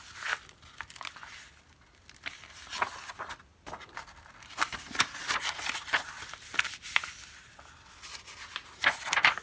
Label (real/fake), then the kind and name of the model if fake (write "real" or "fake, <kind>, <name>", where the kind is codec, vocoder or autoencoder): real